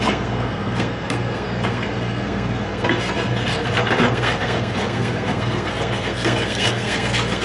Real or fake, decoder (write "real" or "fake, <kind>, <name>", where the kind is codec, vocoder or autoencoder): fake, codec, SNAC